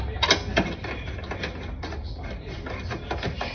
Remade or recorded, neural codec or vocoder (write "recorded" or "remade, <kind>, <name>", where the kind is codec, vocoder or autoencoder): recorded